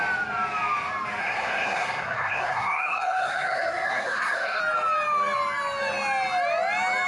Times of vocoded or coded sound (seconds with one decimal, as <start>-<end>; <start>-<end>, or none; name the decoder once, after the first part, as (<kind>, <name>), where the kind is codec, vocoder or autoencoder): 1.2-4.6 (codec, SNAC)